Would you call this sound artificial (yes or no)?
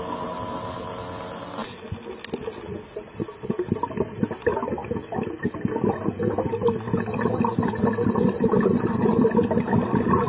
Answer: no